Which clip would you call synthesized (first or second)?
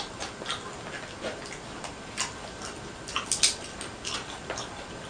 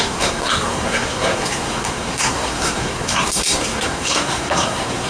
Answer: second